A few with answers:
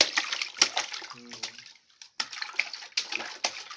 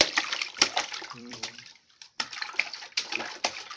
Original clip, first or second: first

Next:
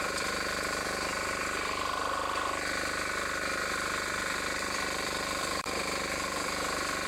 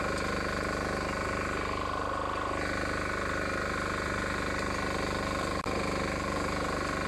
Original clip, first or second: second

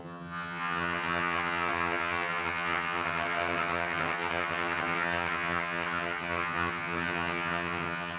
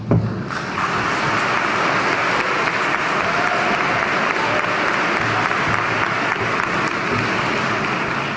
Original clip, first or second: second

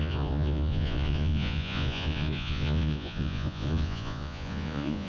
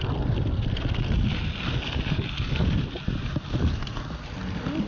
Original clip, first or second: second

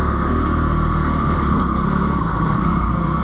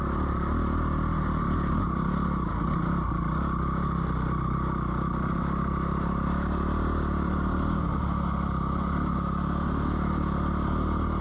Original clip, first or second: second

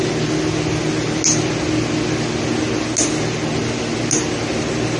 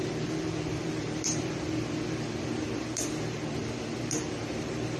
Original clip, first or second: first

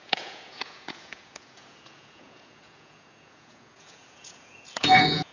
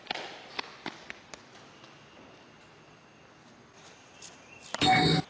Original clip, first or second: second